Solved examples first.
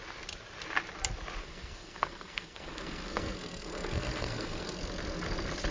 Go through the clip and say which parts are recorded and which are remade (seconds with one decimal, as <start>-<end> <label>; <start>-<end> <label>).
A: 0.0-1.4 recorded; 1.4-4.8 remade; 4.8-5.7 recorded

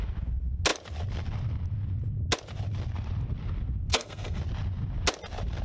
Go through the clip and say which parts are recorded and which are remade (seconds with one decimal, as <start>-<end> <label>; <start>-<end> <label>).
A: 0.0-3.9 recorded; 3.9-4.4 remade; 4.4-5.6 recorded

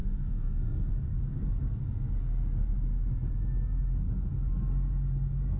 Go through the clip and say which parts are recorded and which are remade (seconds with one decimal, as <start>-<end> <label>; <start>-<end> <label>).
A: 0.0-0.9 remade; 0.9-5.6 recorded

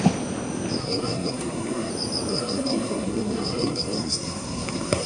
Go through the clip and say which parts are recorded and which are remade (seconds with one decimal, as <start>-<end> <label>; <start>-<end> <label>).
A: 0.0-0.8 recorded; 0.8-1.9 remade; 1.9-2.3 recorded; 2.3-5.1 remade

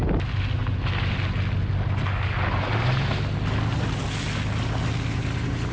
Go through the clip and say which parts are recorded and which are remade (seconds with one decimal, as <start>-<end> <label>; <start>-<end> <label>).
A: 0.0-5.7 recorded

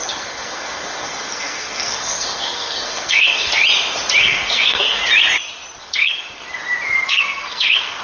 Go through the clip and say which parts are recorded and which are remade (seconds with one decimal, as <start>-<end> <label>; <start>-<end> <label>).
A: 0.0-3.5 remade; 3.5-4.2 recorded; 4.2-5.0 remade; 5.0-5.8 recorded; 5.8-6.4 remade; 6.4-7.1 recorded; 7.1-8.0 remade

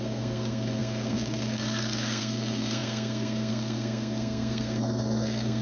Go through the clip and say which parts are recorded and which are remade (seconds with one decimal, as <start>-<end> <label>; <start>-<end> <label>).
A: 0.0-5.6 remade